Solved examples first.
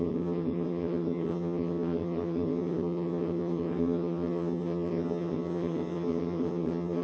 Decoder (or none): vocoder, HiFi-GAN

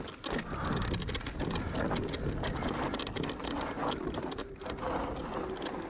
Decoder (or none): none